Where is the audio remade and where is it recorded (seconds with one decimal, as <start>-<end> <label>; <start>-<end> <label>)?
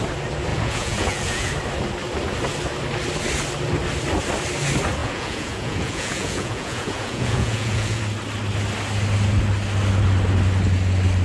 0.0-0.5 recorded; 0.5-1.5 remade; 1.5-5.0 recorded; 5.0-8.0 remade; 8.0-11.2 recorded